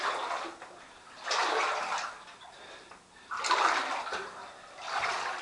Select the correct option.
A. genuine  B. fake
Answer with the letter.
A